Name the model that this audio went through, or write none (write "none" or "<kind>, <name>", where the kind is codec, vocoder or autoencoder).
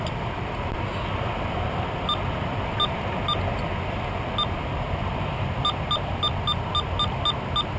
none